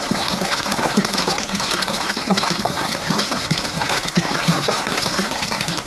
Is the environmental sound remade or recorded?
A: remade